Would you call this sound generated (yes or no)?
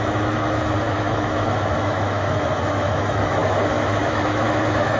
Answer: yes